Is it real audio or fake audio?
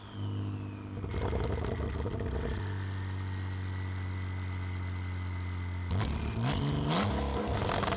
real